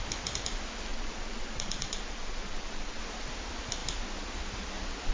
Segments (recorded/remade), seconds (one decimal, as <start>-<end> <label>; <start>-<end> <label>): 0.0-0.9 recorded; 0.9-3.0 remade; 3.0-5.1 recorded